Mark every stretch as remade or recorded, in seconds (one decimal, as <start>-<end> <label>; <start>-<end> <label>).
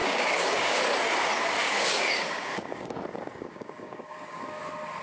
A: 0.0-0.8 remade; 0.8-1.6 recorded; 1.6-4.6 remade; 4.6-5.0 recorded